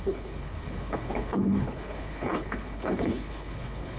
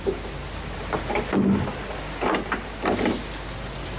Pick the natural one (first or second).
second